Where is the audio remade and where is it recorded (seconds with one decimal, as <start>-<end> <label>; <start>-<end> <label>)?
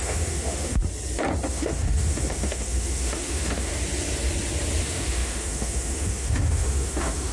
0.0-0.8 remade; 0.8-1.5 recorded; 1.5-3.7 remade; 3.7-4.8 recorded; 4.8-7.3 remade